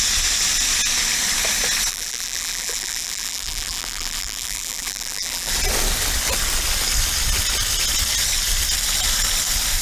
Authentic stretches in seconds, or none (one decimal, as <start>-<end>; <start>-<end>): 0.0-1.9; 5.5-9.8